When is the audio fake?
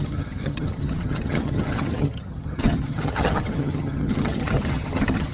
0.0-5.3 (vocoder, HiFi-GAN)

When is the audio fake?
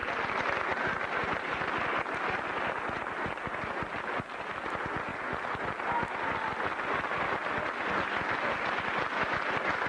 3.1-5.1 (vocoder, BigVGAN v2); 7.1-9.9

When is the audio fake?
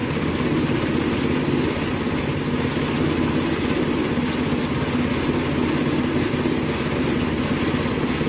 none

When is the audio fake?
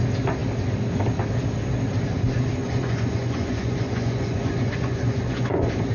2.6-5.9 (vocoder, Vocos)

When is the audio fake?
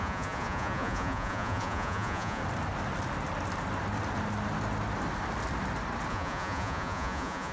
0.0-2.4 (vocoder, Vocos); 6.1-7.5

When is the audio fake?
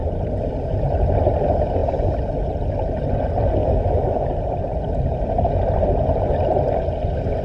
3.6-4.3 (autoencoder, DAC-VAE)